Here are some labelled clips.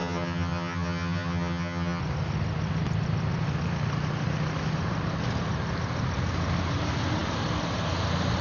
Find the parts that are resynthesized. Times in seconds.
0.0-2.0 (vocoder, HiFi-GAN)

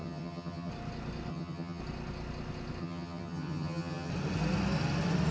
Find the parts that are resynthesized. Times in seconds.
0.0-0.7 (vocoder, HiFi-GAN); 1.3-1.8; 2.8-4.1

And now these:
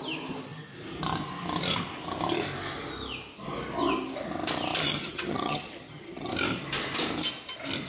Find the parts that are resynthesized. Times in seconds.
4.8-6.3 (vocoder, HiFi-GAN)

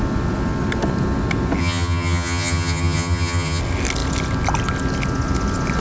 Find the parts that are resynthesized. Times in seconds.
1.6-3.6 (vocoder, HiFi-GAN)